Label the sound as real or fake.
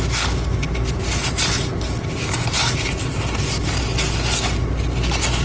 real